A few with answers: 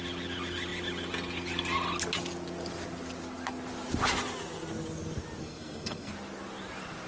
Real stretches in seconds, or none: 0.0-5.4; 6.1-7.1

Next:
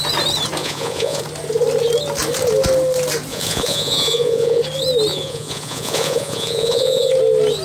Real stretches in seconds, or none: 0.0-0.6; 1.2-3.3; 4.6-5.1; 7.1-7.6